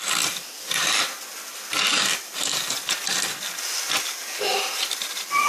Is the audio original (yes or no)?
yes